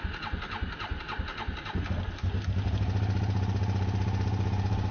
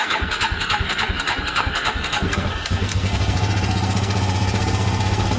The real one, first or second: first